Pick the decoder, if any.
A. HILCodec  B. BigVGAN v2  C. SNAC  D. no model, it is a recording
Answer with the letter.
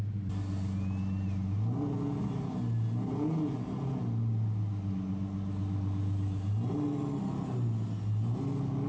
D